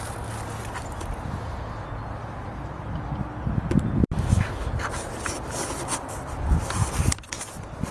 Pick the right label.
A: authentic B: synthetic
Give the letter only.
A